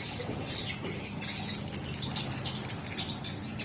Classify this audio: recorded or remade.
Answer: recorded